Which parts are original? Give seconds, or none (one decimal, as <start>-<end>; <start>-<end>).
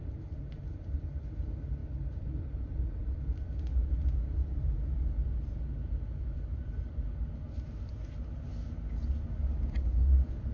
0.0-10.5